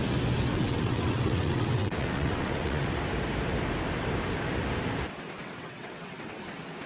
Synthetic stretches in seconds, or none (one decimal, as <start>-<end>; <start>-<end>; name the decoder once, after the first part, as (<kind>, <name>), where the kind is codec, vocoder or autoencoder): 0.5-2.9 (vocoder, WaveNeXt); 5.4-6.4